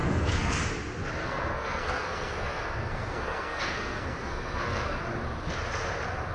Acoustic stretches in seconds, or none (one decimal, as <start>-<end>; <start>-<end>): 0.6-1.2; 5.0-6.3